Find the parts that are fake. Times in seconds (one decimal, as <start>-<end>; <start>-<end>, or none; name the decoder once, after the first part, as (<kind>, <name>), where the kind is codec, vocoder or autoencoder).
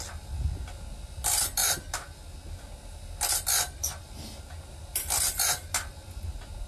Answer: none